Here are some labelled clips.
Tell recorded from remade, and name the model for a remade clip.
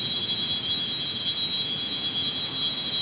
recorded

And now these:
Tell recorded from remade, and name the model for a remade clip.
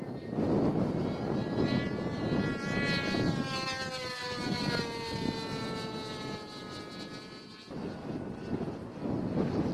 recorded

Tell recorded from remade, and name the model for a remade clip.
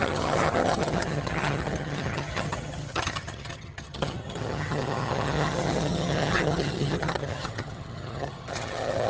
remade, vocoder, HiFi-GAN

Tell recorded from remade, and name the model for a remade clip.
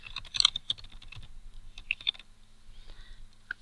recorded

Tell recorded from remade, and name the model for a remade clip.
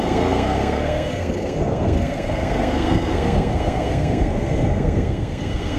remade, codec, SNAC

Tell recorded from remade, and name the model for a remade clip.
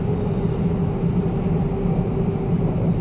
recorded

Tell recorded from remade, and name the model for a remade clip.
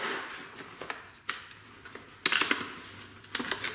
recorded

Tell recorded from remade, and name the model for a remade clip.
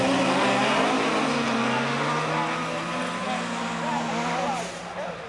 recorded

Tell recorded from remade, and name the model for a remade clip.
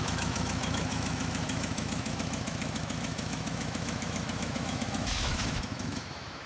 remade, autoencoder, DAC-VAE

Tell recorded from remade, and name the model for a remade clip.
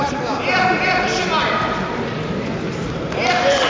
recorded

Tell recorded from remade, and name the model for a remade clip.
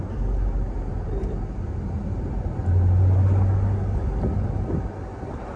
recorded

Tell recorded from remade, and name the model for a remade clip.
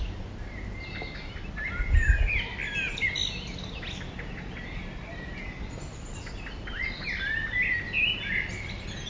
recorded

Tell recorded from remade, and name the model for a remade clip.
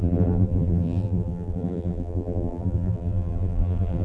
remade, vocoder, BigVGAN v2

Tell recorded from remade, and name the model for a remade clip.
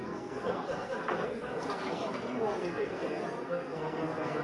remade, codec, SNAC